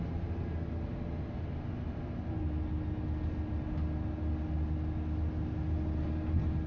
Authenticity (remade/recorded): recorded